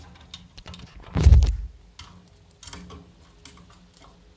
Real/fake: real